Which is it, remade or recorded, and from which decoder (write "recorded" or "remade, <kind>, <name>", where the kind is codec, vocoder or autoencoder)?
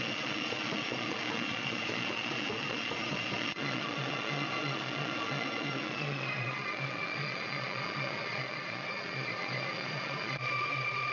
remade, vocoder, Vocos